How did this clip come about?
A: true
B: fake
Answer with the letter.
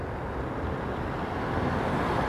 A